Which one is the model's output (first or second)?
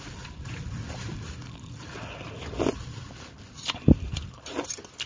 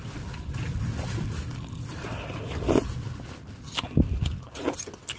first